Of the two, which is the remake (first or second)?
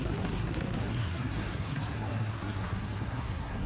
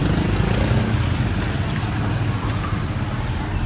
first